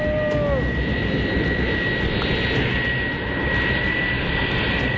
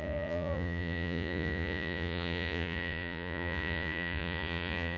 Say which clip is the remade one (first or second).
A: second